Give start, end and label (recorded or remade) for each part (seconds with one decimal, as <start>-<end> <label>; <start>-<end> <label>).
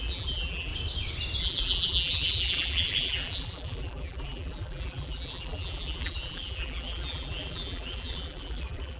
0.0-0.7 remade; 0.7-1.4 recorded; 1.4-9.0 remade